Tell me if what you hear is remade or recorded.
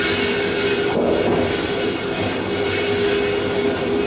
recorded